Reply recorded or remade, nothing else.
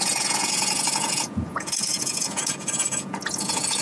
remade